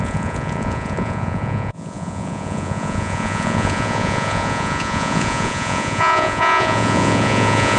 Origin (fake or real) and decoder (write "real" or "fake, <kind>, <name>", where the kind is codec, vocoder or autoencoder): fake, vocoder, Vocos